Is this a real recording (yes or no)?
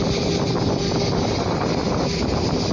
yes